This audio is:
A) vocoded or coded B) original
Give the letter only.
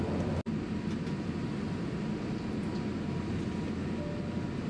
B